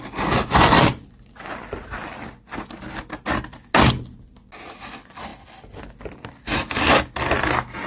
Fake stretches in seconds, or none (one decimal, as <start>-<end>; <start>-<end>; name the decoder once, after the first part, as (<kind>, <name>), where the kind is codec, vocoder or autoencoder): none